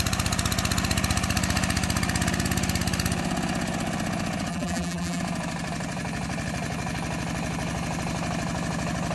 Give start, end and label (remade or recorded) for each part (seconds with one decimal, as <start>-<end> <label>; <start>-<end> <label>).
0.0-4.5 recorded; 4.5-5.2 remade; 5.2-9.1 recorded